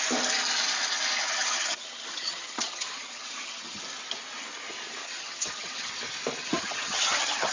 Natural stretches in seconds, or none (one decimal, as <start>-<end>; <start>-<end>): 0.0-1.2; 3.8-5.0; 5.9-6.4